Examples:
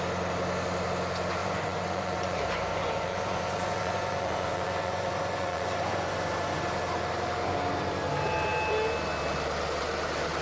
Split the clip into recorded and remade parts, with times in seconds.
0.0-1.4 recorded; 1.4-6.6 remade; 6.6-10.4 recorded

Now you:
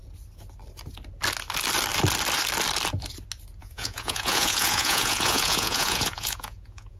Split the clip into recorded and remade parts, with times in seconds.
0.0-3.6 recorded; 3.6-7.0 remade